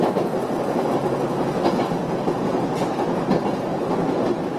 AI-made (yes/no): no